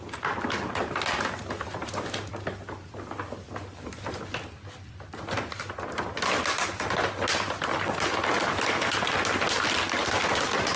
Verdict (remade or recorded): recorded